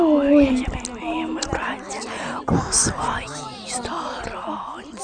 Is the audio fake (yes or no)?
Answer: no